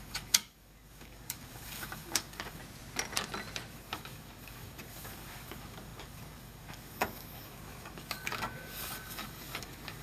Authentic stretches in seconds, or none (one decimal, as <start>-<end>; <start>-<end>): 2.6-3.7